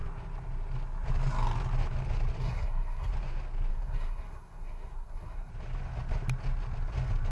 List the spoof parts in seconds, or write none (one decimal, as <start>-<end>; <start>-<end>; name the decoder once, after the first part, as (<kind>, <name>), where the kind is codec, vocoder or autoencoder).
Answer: 2.4-3.1 (codec, SNAC); 3.7-5.5